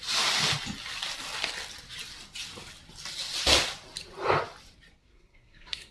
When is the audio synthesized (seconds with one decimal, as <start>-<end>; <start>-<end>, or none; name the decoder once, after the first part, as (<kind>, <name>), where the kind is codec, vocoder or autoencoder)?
5.0-5.9 (codec, SNAC)